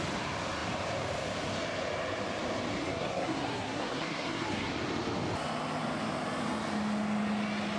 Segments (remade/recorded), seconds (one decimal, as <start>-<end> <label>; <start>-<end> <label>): 0.0-2.8 recorded; 2.8-4.7 remade; 4.7-7.8 recorded